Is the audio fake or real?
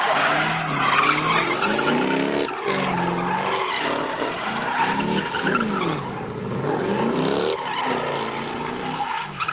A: real